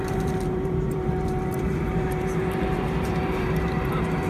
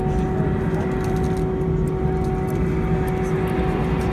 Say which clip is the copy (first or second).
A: first